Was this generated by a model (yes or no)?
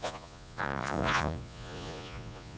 yes